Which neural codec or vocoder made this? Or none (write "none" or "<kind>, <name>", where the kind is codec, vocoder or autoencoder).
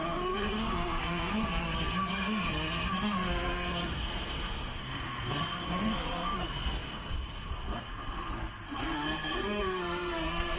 codec, SNAC